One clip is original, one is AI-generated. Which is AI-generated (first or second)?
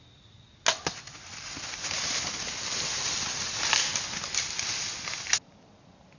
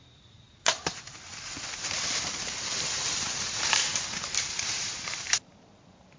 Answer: second